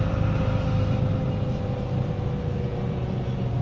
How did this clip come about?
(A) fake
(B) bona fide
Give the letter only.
B